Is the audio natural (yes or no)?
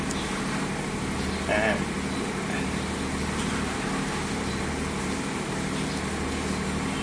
yes